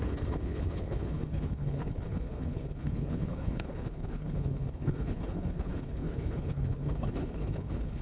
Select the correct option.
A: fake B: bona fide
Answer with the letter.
A